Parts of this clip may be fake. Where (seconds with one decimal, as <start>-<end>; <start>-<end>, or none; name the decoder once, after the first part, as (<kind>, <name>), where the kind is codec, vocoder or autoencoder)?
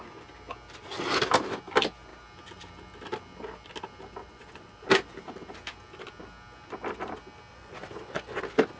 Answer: 4.2-4.8 (vocoder, Vocos); 7.5-8.4